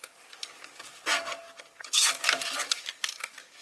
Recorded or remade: remade